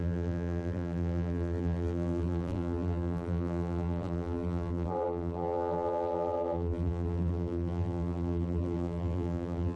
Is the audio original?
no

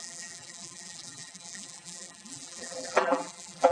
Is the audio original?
no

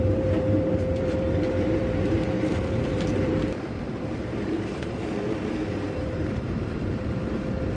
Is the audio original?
no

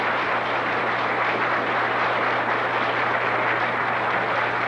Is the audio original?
yes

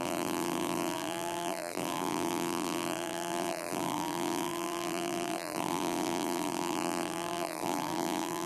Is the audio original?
no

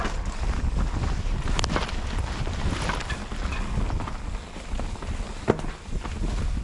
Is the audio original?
yes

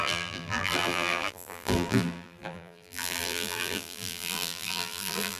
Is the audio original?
no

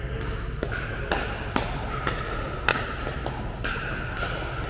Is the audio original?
yes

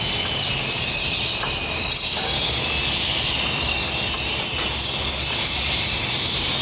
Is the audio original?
yes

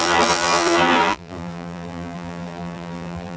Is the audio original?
no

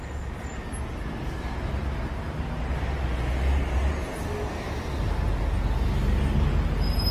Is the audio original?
yes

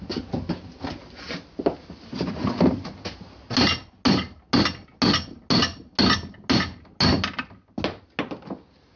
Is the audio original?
yes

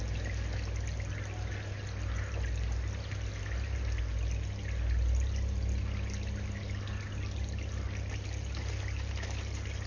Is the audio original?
yes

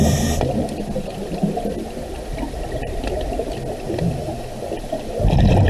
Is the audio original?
yes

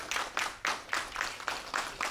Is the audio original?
yes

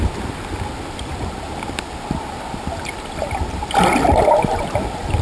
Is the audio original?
yes